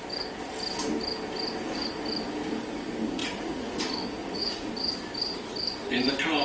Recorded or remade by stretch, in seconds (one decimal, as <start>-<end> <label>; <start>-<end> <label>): 0.0-3.2 recorded; 3.2-3.8 remade; 3.8-4.2 recorded; 4.2-4.7 remade; 4.7-6.4 recorded

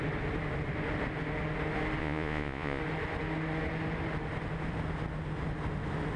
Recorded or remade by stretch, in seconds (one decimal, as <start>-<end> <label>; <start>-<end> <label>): 0.0-2.0 recorded; 2.0-2.8 remade; 2.8-6.2 recorded

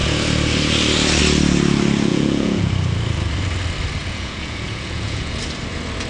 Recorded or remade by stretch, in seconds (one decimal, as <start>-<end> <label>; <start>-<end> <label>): 0.0-2.1 recorded; 2.1-2.7 remade; 2.7-4.0 recorded; 4.0-5.4 remade; 5.4-6.1 recorded

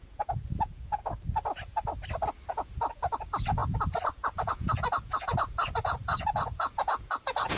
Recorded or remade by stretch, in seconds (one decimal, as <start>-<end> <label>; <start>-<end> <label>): 0.0-1.0 remade; 1.0-2.5 recorded; 2.5-7.6 remade

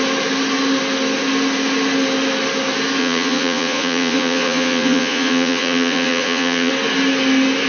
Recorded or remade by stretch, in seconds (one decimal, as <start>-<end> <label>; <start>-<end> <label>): 0.0-3.0 recorded; 3.0-6.7 remade; 6.7-7.7 recorded

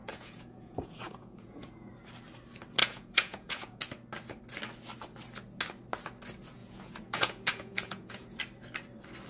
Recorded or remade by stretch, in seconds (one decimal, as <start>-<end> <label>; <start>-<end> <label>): 0.0-1.9 remade; 1.9-2.8 recorded; 2.8-3.8 remade; 3.8-6.6 recorded; 6.6-8.4 remade; 8.4-9.3 recorded